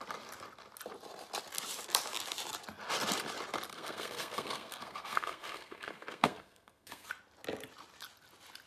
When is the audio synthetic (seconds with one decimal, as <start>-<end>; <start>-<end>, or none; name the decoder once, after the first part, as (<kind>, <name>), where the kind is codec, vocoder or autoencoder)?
3.7-7.1 (codec, SNAC)